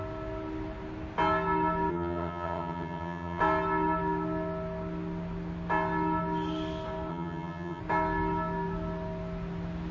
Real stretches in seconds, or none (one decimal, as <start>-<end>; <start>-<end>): 0.0-1.9; 3.4-7.1; 7.8-9.9